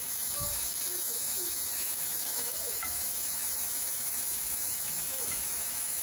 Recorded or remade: remade